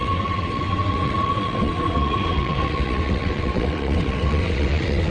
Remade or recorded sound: remade